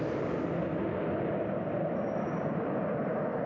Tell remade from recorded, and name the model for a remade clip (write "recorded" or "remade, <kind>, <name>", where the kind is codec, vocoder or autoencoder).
recorded